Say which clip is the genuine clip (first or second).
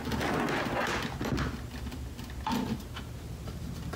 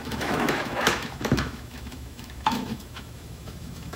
first